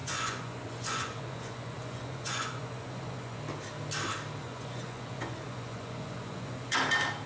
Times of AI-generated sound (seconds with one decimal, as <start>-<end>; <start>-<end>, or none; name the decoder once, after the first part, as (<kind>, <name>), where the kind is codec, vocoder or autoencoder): 0.0-3.4 (vocoder, Vocos); 4.4-6.8